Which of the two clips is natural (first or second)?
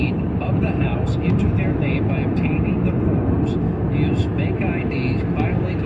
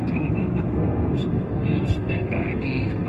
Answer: first